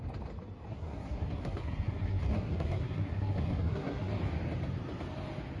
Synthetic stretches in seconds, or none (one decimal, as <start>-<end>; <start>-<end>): 0.7-4.1

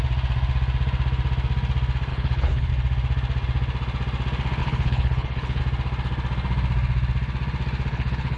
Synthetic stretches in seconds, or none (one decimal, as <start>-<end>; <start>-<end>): 2.1-2.7; 4.6-5.6; 7.9-8.4